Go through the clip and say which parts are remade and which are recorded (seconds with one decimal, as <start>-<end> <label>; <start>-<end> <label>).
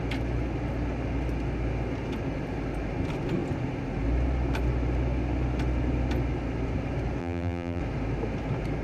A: 0.0-7.2 recorded; 7.2-7.8 remade; 7.8-8.8 recorded